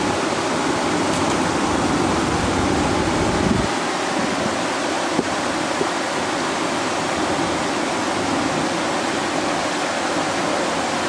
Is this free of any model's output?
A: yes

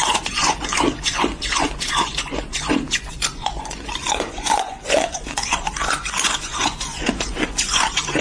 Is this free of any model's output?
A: no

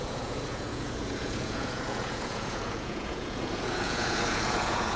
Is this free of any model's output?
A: no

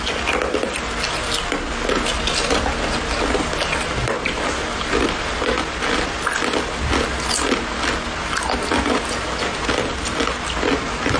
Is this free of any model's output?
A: yes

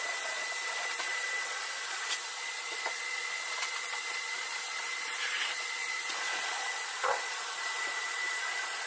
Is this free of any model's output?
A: no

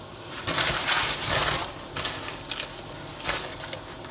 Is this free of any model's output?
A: yes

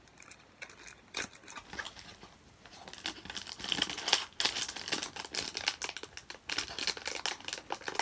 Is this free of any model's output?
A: yes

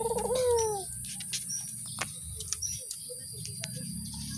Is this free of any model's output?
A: yes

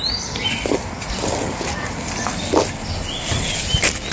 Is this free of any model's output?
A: yes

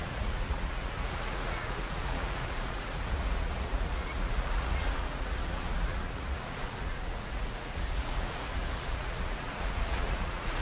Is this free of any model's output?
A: no